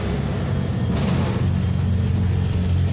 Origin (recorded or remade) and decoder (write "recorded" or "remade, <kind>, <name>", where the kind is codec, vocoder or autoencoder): recorded